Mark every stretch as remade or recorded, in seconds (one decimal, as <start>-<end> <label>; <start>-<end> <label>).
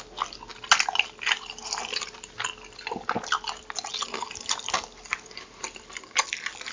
0.0-6.7 recorded